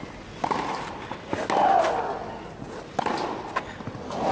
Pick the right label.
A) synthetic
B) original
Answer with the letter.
B